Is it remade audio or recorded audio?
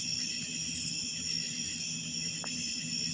recorded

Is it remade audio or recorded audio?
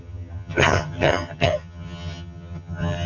remade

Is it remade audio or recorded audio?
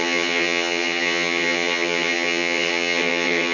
remade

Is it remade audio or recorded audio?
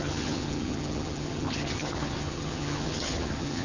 remade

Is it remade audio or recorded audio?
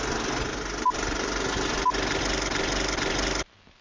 recorded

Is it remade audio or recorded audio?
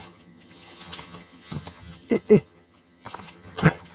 remade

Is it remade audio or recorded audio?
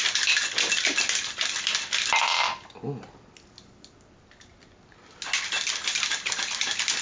recorded